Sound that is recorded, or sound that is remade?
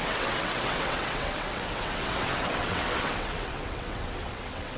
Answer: remade